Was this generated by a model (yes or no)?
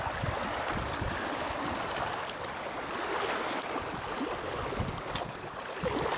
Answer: no